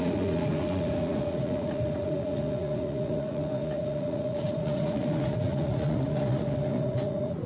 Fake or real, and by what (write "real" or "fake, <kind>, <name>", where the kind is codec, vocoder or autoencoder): fake, vocoder, Vocos